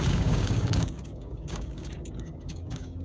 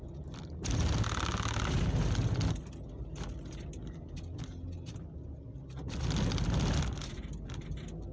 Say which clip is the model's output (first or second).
first